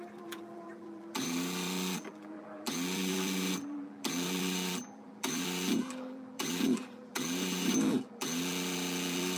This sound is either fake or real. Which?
fake